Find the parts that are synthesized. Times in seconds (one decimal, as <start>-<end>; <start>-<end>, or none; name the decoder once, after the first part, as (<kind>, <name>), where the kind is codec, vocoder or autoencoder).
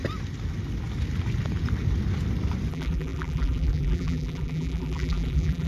2.7-5.7 (vocoder, BigVGAN v2)